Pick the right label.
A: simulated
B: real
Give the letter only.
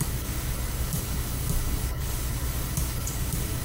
A